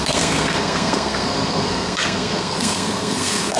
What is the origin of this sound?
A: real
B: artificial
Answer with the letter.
B